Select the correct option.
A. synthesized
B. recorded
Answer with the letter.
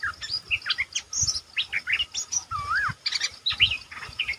B